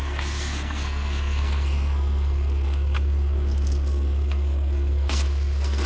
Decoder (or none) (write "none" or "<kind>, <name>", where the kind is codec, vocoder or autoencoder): codec, SNAC